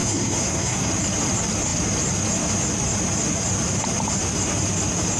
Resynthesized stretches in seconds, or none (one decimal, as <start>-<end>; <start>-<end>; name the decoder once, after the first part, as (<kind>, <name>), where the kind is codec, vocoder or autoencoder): 0.0-0.9 (codec, SNAC)

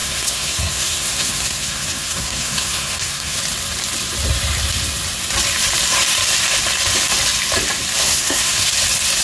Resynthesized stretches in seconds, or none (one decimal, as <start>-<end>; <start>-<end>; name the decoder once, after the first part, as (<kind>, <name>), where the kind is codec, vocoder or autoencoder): 0.0-3.4 (codec, SNAC); 8.0-8.7